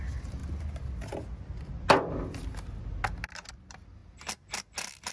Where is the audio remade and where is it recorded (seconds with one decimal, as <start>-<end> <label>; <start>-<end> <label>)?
0.0-5.1 recorded